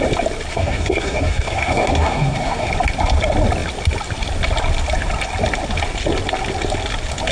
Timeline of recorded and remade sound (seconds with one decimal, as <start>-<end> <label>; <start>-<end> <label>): 0.0-0.5 recorded; 0.5-2.7 remade; 2.7-7.3 recorded